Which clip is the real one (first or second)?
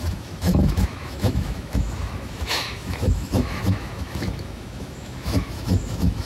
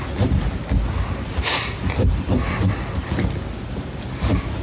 second